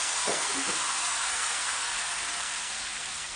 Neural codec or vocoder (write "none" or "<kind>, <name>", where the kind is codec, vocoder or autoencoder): codec, SNAC